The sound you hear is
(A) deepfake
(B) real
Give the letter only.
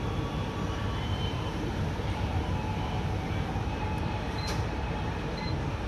A